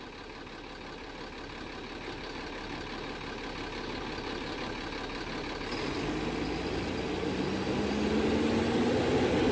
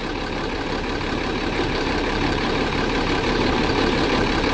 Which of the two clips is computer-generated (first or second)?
second